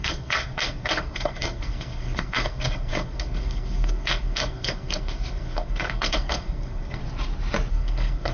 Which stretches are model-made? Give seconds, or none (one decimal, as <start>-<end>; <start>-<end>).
0.0-7.0; 7.7-8.3